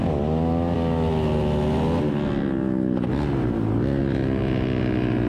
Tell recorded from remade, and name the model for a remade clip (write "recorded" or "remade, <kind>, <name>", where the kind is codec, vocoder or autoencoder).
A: recorded